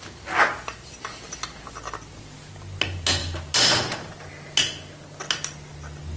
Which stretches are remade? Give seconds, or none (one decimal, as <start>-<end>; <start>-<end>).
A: none